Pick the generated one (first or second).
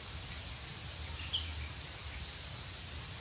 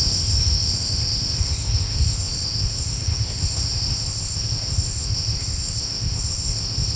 second